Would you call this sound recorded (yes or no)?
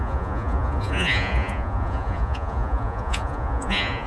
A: no